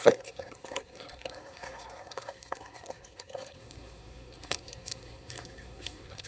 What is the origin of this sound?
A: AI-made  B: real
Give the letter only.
A